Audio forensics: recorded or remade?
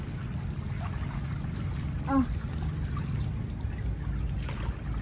recorded